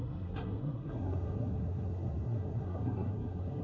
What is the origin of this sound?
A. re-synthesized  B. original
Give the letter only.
A